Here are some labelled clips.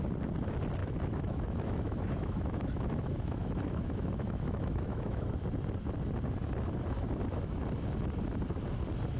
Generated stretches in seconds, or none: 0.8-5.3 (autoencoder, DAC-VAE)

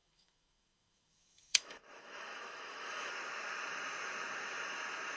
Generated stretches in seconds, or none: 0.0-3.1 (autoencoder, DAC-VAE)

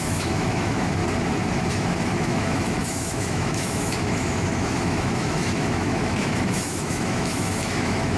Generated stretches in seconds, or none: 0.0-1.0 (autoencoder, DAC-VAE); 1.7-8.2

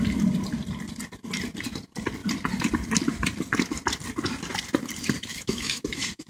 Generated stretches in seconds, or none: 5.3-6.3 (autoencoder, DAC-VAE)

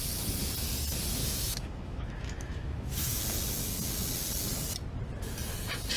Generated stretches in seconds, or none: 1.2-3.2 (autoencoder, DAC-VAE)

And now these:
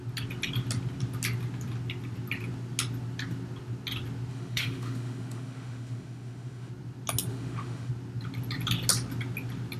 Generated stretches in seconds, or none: 4.3-6.7 (autoencoder, DAC-VAE); 7.3-7.9